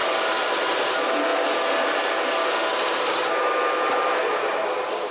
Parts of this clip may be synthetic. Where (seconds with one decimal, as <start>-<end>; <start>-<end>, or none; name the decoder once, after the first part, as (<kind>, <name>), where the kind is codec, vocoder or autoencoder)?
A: none